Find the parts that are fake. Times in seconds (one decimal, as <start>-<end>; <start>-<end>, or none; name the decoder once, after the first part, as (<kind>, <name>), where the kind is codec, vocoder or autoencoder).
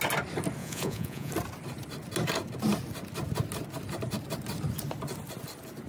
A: 0.6-1.3 (vocoder, Vocos)